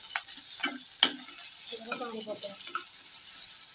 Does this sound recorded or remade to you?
recorded